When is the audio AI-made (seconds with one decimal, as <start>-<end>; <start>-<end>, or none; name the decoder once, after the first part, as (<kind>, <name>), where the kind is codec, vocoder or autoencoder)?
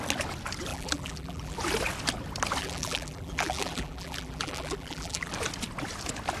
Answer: 0.7-1.6 (vocoder, BigVGAN v2); 2.6-5.3